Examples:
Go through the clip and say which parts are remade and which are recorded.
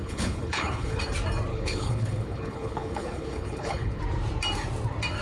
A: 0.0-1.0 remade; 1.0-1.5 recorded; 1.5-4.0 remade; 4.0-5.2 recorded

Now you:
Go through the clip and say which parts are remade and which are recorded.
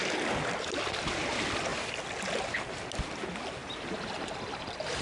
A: 0.0-5.0 recorded